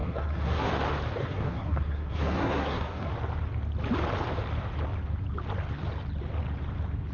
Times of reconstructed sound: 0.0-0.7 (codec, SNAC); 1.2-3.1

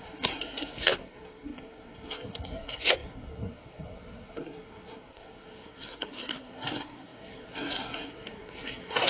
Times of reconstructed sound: 0.0-9.1 (codec, SNAC)